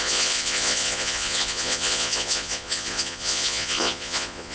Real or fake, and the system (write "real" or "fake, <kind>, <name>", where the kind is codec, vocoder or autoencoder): fake, vocoder, Vocos